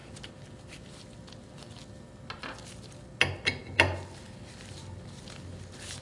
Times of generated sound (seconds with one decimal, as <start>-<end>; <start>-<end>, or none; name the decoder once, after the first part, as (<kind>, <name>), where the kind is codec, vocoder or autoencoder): none